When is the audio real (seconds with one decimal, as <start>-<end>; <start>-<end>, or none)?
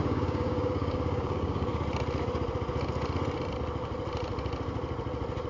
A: 1.7-5.5